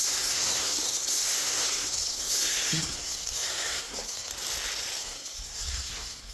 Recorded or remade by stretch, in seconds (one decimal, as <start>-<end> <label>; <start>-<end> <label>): 0.0-4.3 remade; 4.3-5.0 recorded; 5.0-6.3 remade